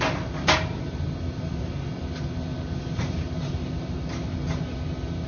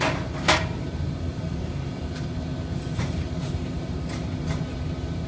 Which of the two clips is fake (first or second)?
second